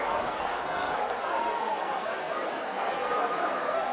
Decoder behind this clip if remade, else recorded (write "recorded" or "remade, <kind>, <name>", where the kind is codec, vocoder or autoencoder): remade, codec, SNAC